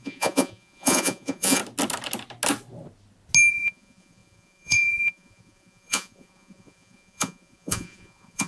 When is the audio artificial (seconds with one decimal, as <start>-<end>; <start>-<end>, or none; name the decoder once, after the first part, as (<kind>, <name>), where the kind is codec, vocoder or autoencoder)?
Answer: 0.0-1.6 (vocoder, Vocos); 3.5-8.5